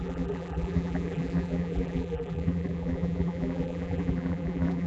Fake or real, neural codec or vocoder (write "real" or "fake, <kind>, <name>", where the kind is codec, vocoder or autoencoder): fake, vocoder, BigVGAN v2